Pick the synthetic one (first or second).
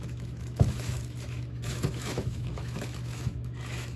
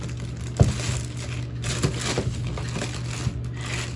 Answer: first